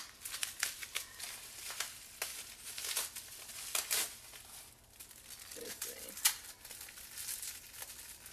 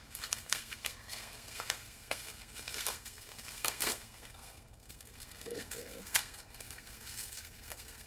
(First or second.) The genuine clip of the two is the first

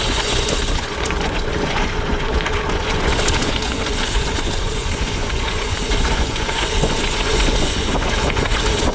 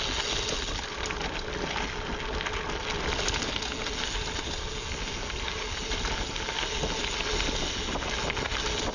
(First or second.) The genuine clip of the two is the second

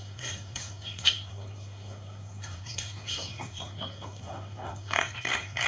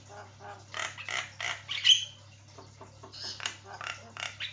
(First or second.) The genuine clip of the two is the second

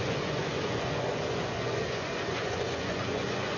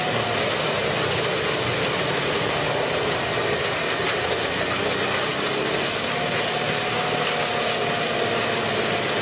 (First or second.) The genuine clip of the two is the second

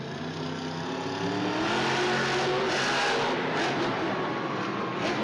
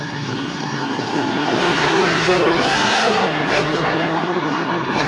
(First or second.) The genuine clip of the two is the first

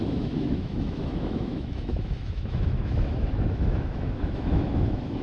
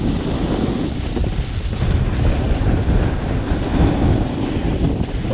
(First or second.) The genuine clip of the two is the second